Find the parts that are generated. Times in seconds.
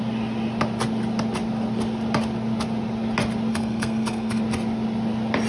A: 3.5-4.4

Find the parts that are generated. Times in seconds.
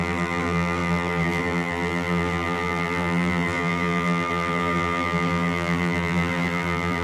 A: 0.0-7.0